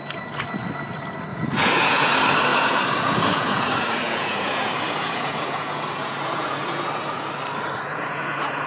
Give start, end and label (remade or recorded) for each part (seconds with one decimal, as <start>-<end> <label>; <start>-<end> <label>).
0.0-1.3 recorded; 1.3-2.1 remade; 2.1-2.5 recorded; 2.5-7.3 remade; 7.3-7.9 recorded; 7.9-8.7 remade